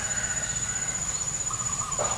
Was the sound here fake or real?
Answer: real